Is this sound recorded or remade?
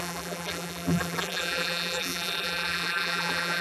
remade